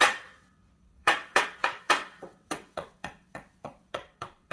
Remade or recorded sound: remade